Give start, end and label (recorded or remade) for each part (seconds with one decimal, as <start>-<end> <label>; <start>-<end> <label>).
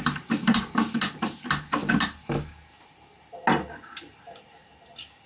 0.0-5.3 recorded